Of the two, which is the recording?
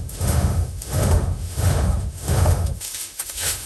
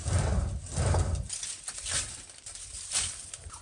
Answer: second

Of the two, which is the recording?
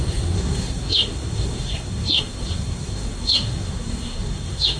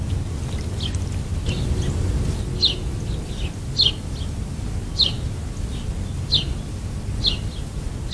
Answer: second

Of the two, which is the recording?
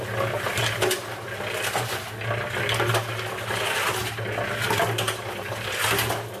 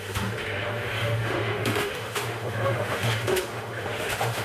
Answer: first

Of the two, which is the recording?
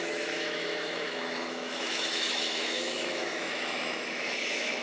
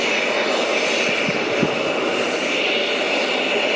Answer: second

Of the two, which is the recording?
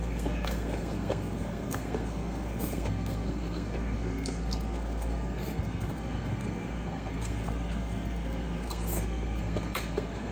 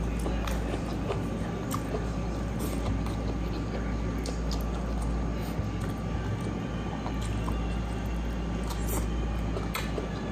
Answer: second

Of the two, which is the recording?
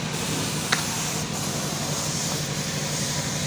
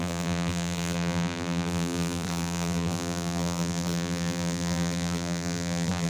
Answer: first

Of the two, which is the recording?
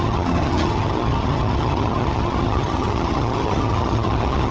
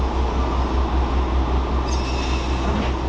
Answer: second